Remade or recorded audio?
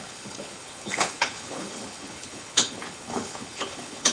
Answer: remade